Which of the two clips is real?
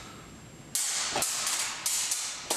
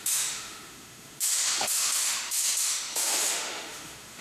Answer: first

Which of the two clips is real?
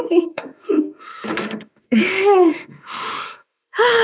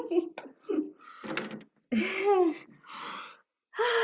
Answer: second